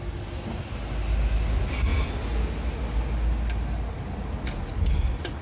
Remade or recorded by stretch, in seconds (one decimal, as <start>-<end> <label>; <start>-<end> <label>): 0.0-5.4 recorded

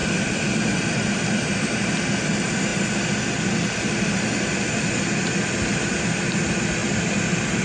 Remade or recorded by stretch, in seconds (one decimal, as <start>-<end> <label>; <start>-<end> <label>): 0.0-1.7 remade; 1.7-6.8 recorded; 6.8-7.6 remade

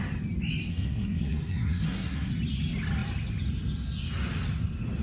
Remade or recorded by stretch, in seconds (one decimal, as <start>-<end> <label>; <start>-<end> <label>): 0.0-0.7 recorded; 0.7-2.3 remade; 2.3-5.0 recorded

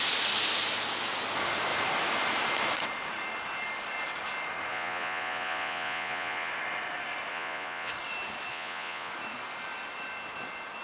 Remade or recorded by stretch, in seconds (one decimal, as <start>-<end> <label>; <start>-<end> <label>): 0.0-4.7 recorded; 4.7-6.5 remade; 6.5-7.3 recorded; 7.3-7.9 remade; 7.9-8.5 recorded; 8.5-9.1 remade; 9.1-10.8 recorded

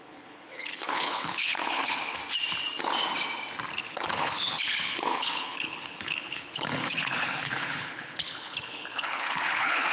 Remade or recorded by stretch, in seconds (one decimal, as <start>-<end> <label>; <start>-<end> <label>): 0.0-2.2 remade; 2.2-3.9 recorded; 3.9-9.9 remade